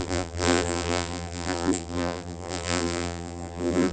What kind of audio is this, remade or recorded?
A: remade